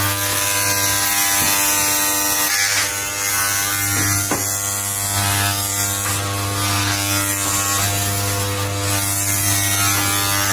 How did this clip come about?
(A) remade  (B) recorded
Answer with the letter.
B